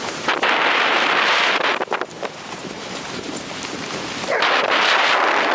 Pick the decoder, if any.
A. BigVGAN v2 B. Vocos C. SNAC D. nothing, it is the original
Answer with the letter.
A